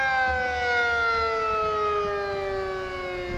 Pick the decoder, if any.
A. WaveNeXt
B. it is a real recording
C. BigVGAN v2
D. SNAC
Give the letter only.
B